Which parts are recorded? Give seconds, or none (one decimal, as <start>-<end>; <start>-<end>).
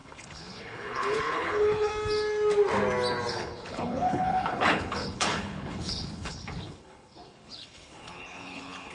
1.9-3.3